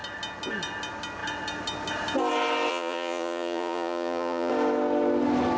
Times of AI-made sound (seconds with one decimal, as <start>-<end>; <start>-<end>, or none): 2.7-4.5